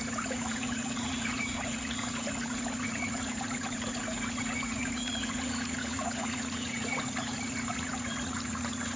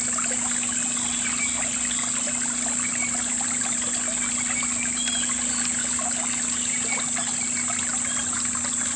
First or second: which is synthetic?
first